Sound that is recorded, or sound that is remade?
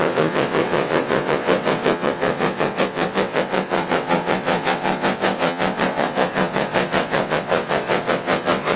remade